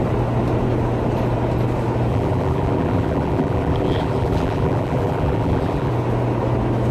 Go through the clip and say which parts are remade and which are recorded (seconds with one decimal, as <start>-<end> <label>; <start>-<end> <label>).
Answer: 0.0-2.1 recorded; 2.1-5.9 remade; 5.9-6.9 recorded